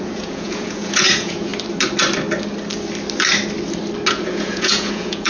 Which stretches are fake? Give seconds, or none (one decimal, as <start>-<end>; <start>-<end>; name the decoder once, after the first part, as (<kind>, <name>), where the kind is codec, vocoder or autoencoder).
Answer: 0.0-1.5 (vocoder, Vocos); 4.1-5.3